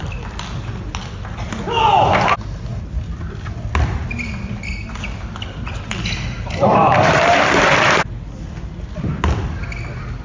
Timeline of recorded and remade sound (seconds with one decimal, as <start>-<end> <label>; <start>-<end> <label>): 0.0-6.7 recorded; 6.7-8.1 remade; 8.1-10.2 recorded